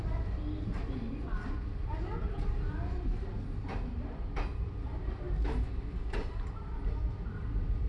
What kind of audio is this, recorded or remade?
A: recorded